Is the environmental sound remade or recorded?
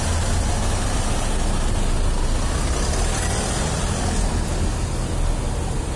recorded